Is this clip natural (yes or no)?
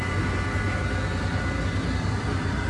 yes